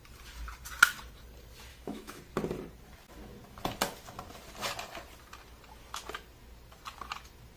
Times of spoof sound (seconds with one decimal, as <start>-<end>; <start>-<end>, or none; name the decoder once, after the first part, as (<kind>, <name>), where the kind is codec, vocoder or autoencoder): 1.7-2.2 (autoencoder, DAC-VAE)